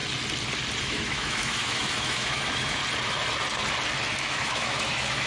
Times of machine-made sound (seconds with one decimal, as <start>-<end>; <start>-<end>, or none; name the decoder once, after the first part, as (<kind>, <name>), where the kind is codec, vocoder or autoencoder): 0.8-2.8 (autoencoder, DAC-VAE); 4.2-5.3